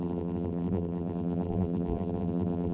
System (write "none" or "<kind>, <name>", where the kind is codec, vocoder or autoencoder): vocoder, BigVGAN v2